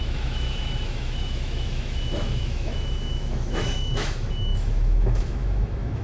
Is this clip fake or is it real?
fake